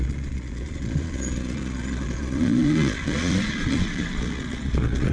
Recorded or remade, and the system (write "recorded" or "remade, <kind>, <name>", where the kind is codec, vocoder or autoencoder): remade, vocoder, Vocos